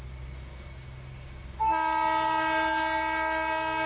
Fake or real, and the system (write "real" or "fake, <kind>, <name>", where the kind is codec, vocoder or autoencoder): real